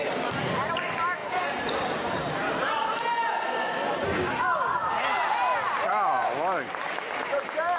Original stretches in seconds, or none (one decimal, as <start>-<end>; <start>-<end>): 0.0-1.2; 1.8-2.2; 3.1-7.8